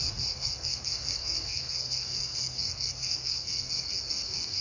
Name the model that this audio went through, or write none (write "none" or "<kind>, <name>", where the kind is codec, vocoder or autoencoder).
codec, SNAC